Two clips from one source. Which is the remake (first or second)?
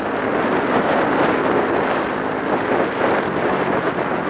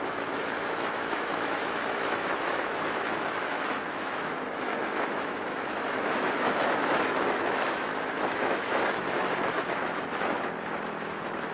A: second